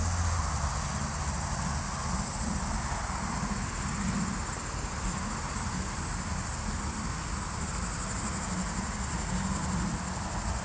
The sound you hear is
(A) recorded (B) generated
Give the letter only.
A